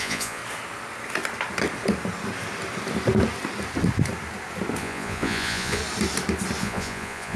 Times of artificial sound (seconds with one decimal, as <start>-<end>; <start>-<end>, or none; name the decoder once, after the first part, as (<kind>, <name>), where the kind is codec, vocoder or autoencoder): 0.0-0.4 (vocoder, Vocos); 4.8-5.8; 6.6-7.4